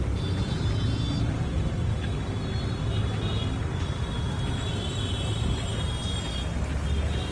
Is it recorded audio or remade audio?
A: recorded